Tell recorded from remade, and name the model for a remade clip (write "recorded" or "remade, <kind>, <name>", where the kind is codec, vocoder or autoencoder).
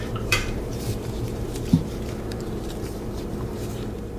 remade, vocoder, BigVGAN v2